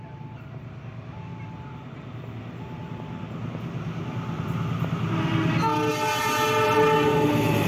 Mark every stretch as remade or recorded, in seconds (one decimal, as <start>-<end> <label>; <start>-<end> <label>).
0.0-7.7 recorded